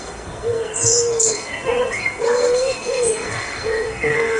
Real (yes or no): no